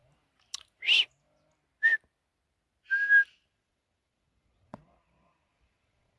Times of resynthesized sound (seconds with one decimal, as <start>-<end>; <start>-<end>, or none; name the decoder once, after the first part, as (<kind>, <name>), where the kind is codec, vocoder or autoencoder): 3.5-6.2 (vocoder, Vocos)